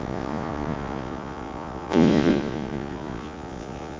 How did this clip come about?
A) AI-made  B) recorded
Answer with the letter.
A